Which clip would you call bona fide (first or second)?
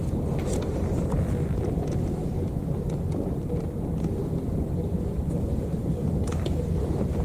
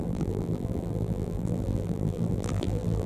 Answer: first